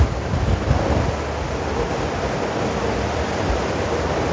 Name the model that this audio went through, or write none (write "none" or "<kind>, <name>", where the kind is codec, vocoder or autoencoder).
none